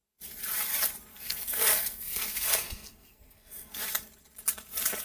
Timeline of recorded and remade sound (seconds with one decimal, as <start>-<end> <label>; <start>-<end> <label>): 0.0-1.1 recorded; 1.1-3.8 remade; 3.8-5.0 recorded